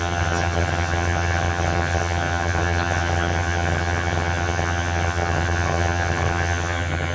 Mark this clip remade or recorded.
remade